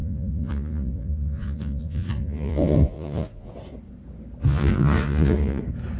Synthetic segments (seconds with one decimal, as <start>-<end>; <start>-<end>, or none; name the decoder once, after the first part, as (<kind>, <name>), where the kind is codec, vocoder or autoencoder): 0.0-3.5 (vocoder, Vocos); 4.4-5.6